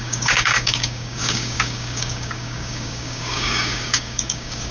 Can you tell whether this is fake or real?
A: fake